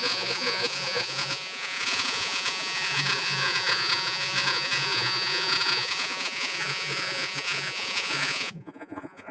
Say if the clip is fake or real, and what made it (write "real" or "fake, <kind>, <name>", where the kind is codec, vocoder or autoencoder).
fake, vocoder, Vocos